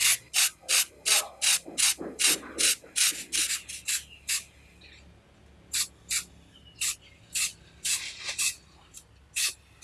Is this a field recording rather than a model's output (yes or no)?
yes